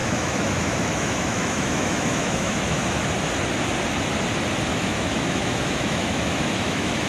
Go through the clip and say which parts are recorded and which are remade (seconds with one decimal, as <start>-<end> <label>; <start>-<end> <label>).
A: 0.0-3.0 remade; 3.0-4.7 recorded; 4.7-7.1 remade